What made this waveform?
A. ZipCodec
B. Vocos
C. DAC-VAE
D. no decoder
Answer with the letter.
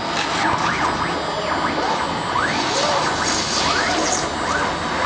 D